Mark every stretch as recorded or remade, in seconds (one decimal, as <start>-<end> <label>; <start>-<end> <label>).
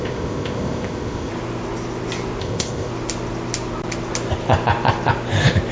0.0-1.3 remade; 1.3-2.4 recorded; 2.4-2.9 remade; 2.9-5.7 recorded